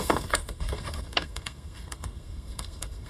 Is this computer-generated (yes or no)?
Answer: yes